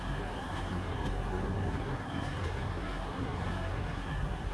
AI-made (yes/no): yes